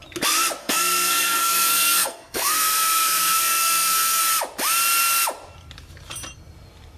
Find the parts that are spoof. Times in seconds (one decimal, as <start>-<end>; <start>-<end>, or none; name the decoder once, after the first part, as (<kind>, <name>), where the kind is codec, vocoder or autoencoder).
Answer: 0.6-4.2 (codec, SNAC)